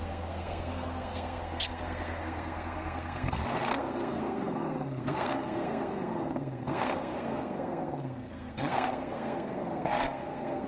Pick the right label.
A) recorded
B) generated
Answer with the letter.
B